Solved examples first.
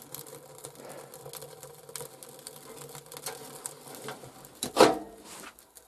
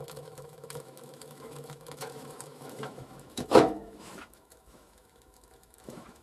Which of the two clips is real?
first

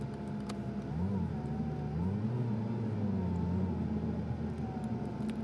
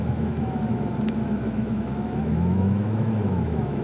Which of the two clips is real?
first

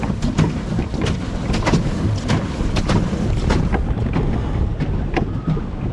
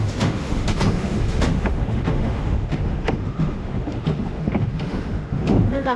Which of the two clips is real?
first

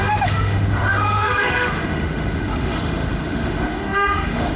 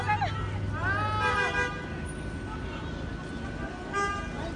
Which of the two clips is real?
second